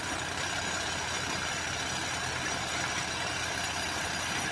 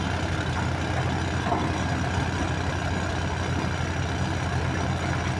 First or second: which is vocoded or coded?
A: first